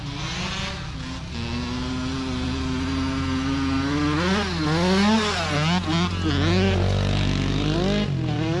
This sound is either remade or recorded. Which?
recorded